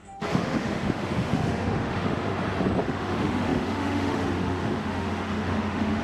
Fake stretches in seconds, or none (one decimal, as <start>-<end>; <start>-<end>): 0.0-2.3; 2.8-6.0